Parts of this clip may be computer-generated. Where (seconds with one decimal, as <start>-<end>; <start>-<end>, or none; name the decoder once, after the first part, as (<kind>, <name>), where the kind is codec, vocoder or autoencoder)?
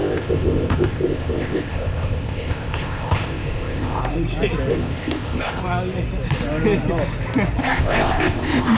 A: 0.0-4.0 (codec, ZipCodec); 4.7-5.6; 7.6-8.8